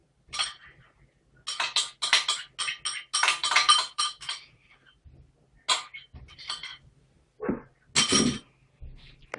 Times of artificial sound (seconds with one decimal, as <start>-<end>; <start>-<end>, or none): 0.0-0.8; 3.4-5.1; 6.7-7.5